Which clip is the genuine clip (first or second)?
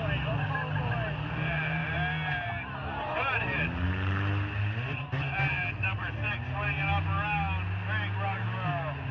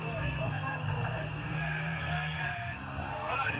first